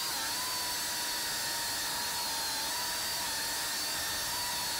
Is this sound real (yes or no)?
yes